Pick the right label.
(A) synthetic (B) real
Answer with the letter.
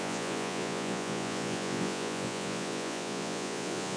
A